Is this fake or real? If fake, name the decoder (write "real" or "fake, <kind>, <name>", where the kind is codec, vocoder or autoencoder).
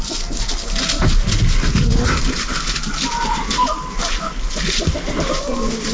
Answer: real